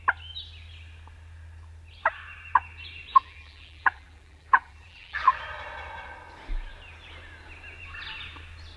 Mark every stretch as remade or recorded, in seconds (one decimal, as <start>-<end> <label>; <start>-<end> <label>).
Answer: 0.0-3.1 recorded; 3.1-5.4 remade; 5.4-8.8 recorded